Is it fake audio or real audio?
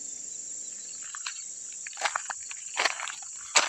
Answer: real